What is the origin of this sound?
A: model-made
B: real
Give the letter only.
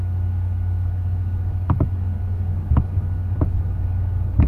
A